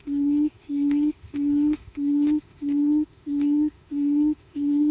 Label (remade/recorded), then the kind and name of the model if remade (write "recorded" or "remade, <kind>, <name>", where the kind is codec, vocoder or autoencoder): remade, autoencoder, DAC-VAE